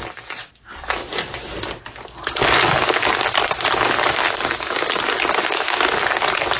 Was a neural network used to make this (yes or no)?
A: no